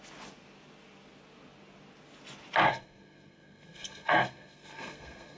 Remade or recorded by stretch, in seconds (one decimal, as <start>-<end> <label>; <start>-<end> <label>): 0.0-2.7 recorded; 2.7-5.4 remade